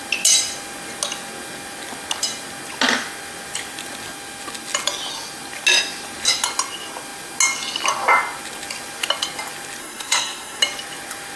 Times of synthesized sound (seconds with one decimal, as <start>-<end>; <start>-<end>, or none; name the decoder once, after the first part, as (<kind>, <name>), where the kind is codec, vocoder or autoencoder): 9.8-10.6 (codec, SNAC)